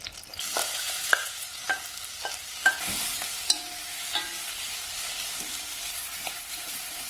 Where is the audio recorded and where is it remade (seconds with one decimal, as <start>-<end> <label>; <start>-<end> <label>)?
0.0-0.6 recorded; 0.6-1.7 remade; 1.7-7.1 recorded